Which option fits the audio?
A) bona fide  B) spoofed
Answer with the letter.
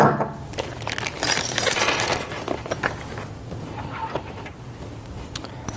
A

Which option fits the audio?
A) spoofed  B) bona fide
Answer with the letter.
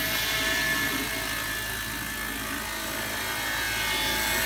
B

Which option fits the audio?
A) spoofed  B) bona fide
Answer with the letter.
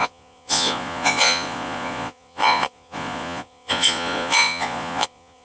A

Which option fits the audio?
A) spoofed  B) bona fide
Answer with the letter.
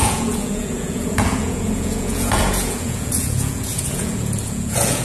A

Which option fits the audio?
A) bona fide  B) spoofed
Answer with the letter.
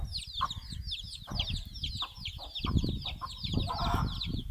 A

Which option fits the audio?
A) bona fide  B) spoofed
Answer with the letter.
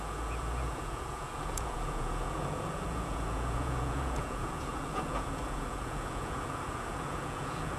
B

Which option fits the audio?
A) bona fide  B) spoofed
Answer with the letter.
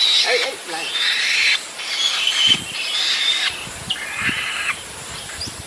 A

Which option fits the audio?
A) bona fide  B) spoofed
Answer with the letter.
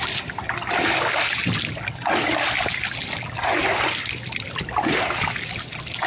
A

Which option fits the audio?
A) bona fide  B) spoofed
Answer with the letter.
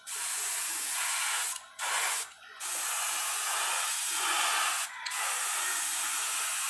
B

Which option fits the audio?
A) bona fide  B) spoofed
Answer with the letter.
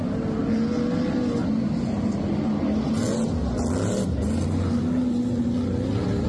A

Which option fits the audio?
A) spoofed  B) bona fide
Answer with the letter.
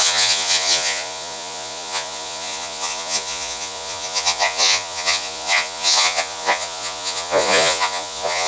A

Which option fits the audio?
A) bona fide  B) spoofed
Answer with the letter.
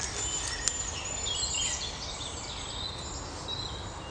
A